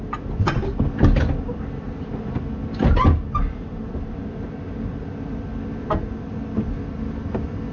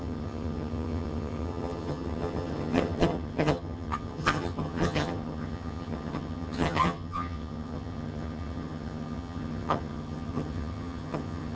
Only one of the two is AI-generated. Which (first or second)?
second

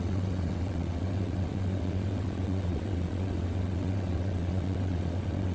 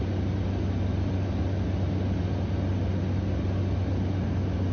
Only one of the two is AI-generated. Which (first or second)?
first